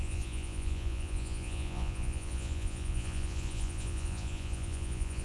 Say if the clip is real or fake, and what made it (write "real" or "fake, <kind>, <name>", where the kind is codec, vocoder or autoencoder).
fake, vocoder, Vocos